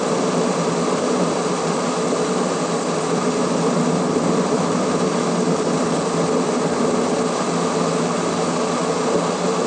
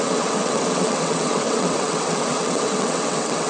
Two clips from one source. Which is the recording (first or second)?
first